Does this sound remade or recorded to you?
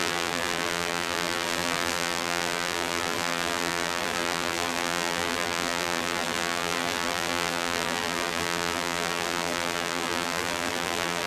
remade